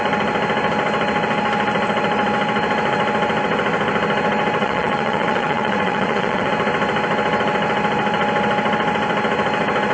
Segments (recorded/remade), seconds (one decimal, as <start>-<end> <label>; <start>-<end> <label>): 0.0-4.6 recorded; 4.6-6.5 remade; 6.5-9.9 recorded